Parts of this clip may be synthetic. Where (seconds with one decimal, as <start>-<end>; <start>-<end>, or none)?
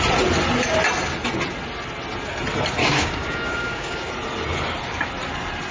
2.8-4.1